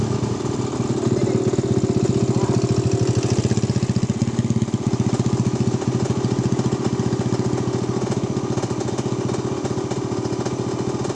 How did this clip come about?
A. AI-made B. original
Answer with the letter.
B